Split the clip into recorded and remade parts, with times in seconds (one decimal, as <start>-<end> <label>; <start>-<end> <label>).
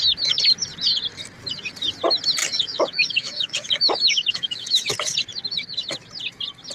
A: 0.0-2.4 recorded; 2.4-4.9 remade; 4.9-6.7 recorded